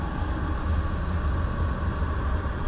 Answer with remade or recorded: recorded